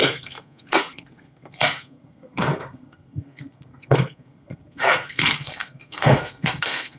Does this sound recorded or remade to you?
remade